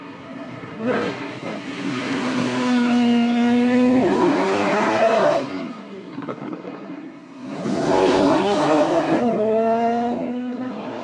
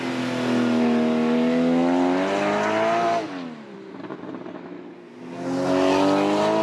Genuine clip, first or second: second